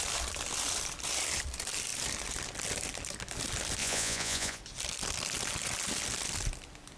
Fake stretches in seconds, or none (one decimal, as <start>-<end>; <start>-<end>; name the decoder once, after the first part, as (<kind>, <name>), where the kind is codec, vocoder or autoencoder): 3.8-4.6 (vocoder, Vocos)